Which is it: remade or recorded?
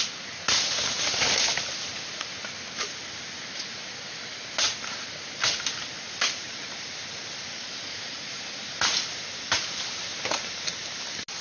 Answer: recorded